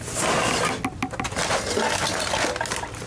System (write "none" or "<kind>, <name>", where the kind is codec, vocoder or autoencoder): none